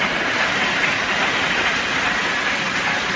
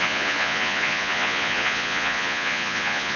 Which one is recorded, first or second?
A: first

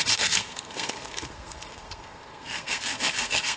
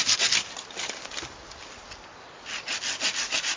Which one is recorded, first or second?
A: second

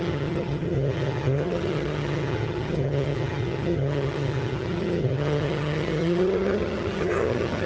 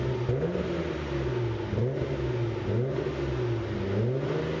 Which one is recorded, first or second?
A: second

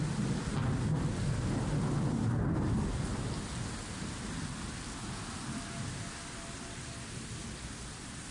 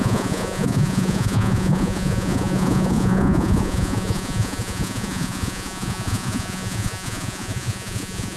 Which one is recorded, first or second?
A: first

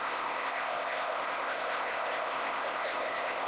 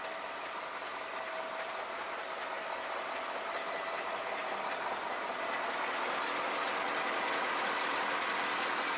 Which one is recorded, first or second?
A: second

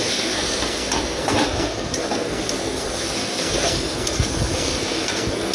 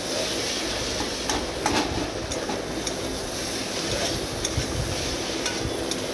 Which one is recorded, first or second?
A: second